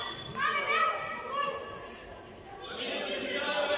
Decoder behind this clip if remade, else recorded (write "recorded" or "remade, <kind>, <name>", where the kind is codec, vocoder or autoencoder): recorded